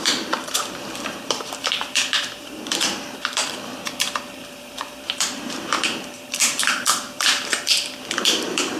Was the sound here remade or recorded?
remade